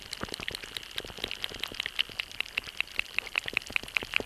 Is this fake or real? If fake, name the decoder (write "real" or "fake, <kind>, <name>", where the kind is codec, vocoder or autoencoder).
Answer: real